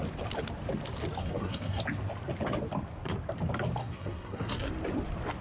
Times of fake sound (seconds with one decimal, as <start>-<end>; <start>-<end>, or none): 1.2-1.8; 3.8-4.7